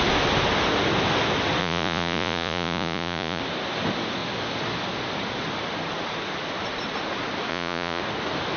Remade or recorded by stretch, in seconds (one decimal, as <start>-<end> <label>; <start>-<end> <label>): 0.0-1.6 recorded; 1.6-3.4 remade; 3.4-7.5 recorded; 7.5-8.0 remade; 8.0-8.6 recorded